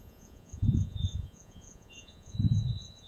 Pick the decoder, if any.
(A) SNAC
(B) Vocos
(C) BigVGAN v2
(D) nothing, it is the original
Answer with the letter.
B